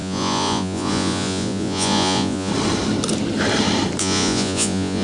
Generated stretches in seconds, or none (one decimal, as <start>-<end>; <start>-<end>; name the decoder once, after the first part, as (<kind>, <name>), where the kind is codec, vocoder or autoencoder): 0.0-2.5 (vocoder, Vocos); 4.0-5.0